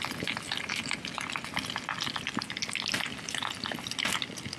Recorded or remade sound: recorded